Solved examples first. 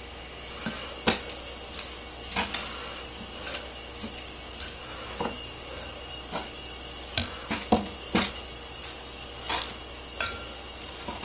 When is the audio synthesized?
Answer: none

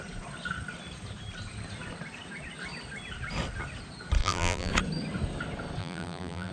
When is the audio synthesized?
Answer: 4.2-4.7 (vocoder, BigVGAN v2); 5.8-6.5

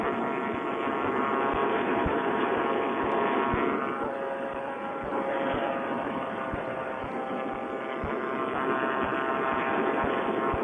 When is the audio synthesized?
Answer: 1.6-2.6 (vocoder, BigVGAN v2)

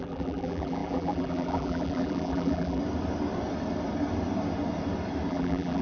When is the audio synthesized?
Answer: 0.0-2.8 (vocoder, BigVGAN v2); 5.3-5.8

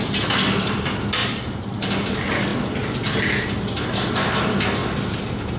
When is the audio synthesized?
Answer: 1.2-1.9 (vocoder, BigVGAN v2)

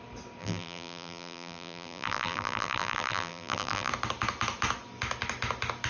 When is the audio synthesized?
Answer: 0.4-3.9 (vocoder, BigVGAN v2)

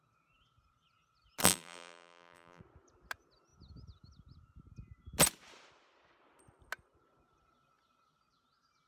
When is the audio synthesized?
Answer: 1.4-2.6 (vocoder, BigVGAN v2)